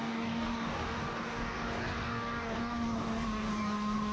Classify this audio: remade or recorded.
remade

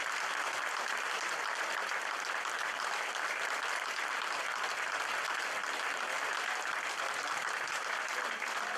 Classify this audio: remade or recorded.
remade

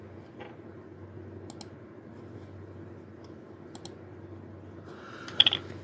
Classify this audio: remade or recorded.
recorded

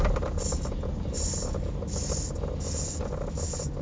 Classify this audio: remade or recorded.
recorded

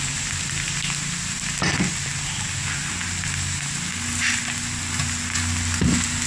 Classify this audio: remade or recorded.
recorded